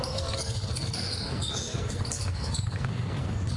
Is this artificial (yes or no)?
yes